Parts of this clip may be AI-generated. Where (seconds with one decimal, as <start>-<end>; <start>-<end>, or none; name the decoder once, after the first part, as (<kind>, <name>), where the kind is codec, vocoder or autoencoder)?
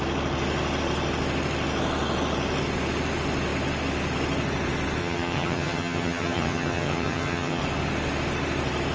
5.0-7.6 (vocoder, HiFi-GAN)